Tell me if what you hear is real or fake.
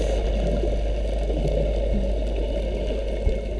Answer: real